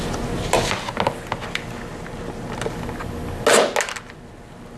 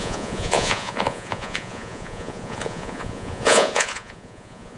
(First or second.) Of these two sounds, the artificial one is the second